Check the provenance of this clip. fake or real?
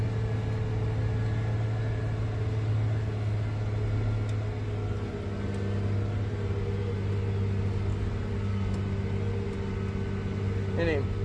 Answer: real